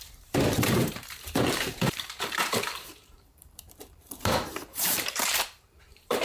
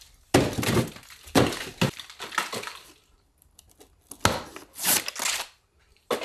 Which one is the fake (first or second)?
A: first